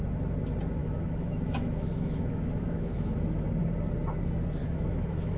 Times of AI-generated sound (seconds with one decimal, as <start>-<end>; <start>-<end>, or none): 0.8-3.5; 4.6-5.4